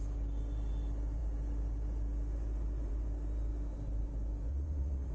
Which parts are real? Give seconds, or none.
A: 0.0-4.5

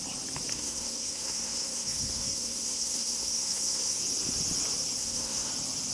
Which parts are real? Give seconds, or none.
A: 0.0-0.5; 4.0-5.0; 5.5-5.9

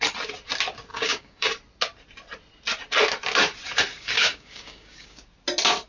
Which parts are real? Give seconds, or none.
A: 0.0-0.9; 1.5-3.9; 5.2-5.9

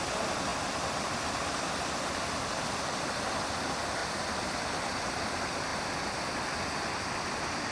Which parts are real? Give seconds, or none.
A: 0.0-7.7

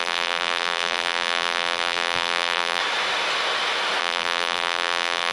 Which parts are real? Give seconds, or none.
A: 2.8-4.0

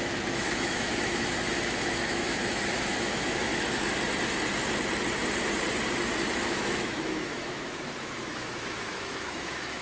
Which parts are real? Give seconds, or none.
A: 3.5-6.4

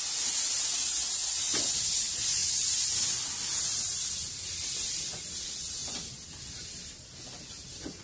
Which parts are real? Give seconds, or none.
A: 0.0-8.0